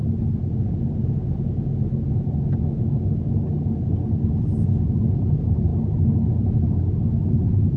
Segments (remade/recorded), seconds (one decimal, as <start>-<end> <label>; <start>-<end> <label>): 0.0-7.8 recorded